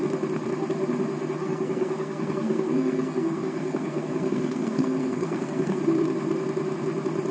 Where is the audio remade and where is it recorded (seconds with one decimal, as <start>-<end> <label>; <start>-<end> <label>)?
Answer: 0.0-1.4 recorded; 1.4-5.8 remade; 5.8-7.3 recorded